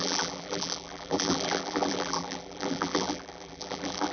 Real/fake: fake